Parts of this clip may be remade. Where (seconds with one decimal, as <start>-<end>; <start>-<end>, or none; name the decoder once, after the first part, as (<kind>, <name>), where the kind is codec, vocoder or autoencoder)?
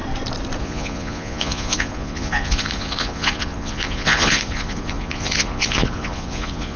0.6-6.8 (vocoder, Vocos)